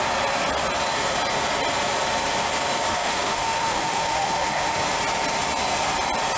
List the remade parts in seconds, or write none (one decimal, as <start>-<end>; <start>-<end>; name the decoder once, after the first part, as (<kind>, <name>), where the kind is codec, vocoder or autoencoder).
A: 2.9-4.8 (autoencoder, DAC-VAE)